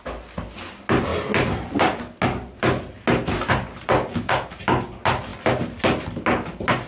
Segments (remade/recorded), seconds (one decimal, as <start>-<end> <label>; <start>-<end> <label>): 0.0-6.9 recorded